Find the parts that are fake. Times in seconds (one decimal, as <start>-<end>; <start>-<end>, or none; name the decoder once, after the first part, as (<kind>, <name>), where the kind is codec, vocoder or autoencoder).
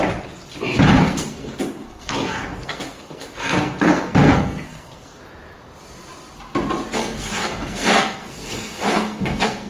1.0-5.2 (codec, SNAC); 7.0-9.7